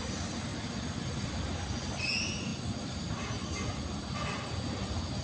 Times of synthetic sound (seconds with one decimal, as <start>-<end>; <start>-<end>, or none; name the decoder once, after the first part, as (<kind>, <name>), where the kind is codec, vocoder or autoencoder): none